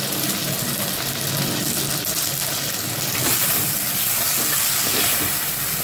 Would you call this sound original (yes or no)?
yes